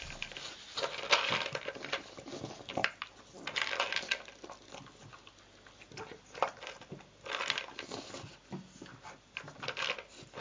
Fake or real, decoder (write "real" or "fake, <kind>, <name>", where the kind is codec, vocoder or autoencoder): real